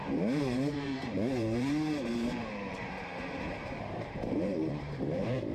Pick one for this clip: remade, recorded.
remade